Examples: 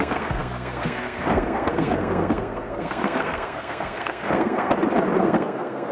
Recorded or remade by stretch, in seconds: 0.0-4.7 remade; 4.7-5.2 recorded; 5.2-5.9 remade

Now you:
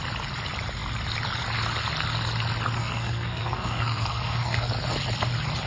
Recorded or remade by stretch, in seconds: 0.0-2.8 recorded; 2.8-4.7 remade; 4.7-5.7 recorded